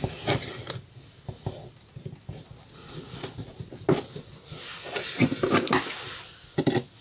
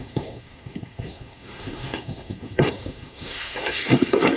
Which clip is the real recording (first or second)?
first